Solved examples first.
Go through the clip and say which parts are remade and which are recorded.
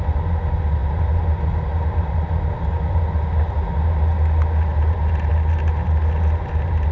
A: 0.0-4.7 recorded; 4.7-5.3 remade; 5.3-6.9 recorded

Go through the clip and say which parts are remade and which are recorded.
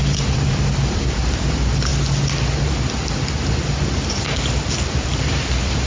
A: 0.0-1.9 remade; 1.9-4.7 recorded; 4.7-5.9 remade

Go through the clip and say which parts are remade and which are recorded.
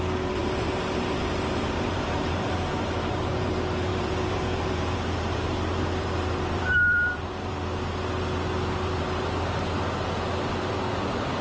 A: 0.0-0.4 recorded; 0.4-2.5 remade; 2.5-3.9 recorded; 3.9-7.5 remade; 7.5-11.4 recorded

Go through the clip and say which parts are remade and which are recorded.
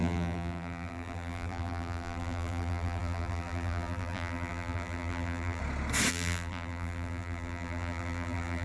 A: 0.0-5.6 remade; 5.6-6.1 recorded; 6.1-8.6 remade